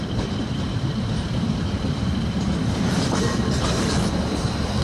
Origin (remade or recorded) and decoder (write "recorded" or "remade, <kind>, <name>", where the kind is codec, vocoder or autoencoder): recorded